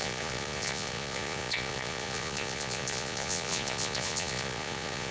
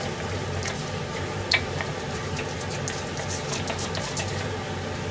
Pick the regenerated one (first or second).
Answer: first